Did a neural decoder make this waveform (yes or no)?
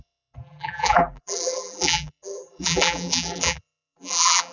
yes